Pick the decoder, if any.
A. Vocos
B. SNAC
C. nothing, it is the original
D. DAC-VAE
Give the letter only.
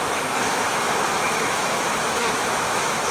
D